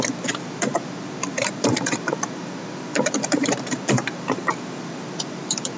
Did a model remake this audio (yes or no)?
yes